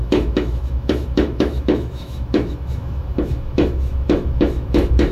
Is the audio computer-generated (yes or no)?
yes